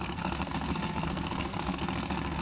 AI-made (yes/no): yes